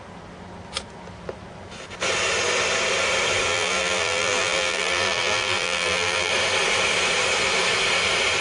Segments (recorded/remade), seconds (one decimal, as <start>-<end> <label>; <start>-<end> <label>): 0.0-3.5 recorded; 3.5-6.3 remade; 6.3-8.4 recorded